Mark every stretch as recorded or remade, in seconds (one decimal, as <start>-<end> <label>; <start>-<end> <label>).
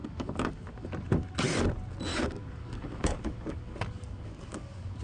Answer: 0.0-0.9 remade; 0.9-2.1 recorded; 2.1-5.0 remade